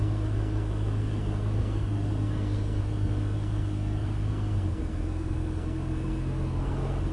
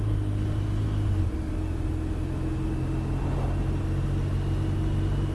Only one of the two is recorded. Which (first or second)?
second